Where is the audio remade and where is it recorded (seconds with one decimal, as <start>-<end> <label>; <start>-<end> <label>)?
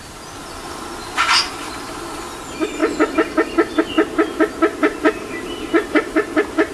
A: 0.0-1.0 recorded; 1.0-2.2 remade; 2.2-4.8 recorded; 4.8-6.7 remade